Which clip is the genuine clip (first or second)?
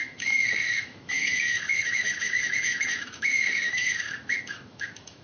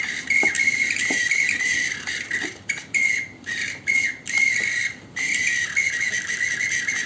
second